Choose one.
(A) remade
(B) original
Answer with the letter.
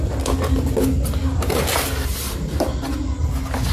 B